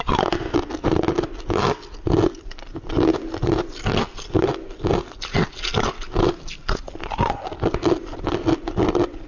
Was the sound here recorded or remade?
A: recorded